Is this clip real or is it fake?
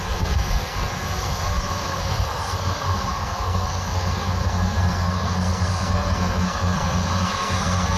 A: fake